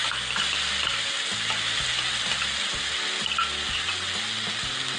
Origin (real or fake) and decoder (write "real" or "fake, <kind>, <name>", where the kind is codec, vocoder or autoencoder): real